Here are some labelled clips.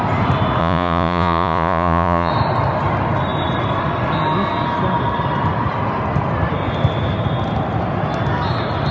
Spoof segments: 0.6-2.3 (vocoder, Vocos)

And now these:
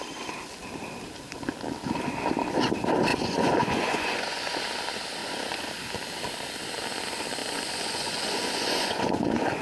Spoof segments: 3.1-4.6 (vocoder, Vocos); 5.2-5.7; 7.4-9.6

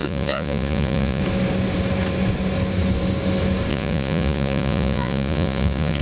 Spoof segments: 0.0-1.2 (vocoder, Vocos); 3.7-6.0

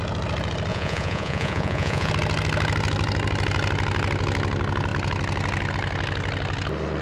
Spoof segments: 0.7-2.1 (vocoder, Vocos)

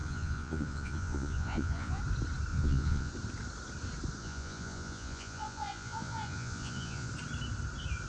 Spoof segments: 0.0-2.0 (vocoder, Vocos); 2.5-3.1; 4.2-7.1

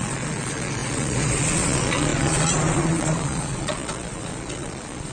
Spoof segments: 0.0-5.1 (vocoder, Vocos)

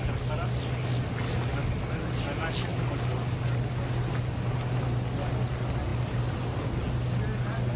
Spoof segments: none